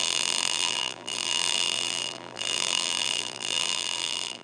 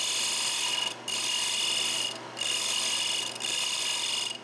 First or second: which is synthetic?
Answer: first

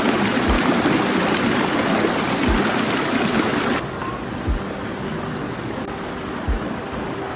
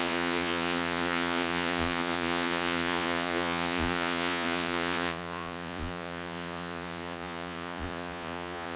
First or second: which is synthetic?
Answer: second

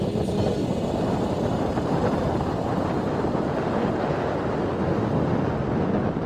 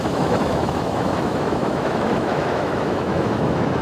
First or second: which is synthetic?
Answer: second